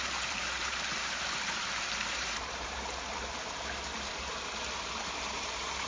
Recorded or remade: remade